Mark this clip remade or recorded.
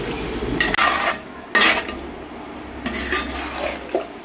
recorded